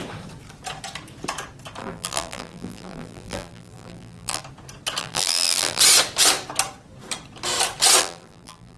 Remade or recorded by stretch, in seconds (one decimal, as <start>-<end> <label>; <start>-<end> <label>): 0.0-1.8 recorded; 1.8-4.4 remade; 4.4-5.0 recorded; 5.0-5.8 remade; 5.8-8.0 recorded; 8.0-8.8 remade